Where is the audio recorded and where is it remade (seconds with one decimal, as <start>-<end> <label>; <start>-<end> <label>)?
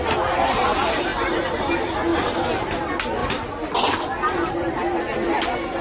0.0-5.8 recorded